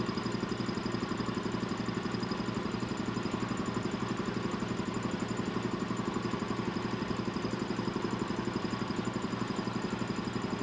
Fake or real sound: real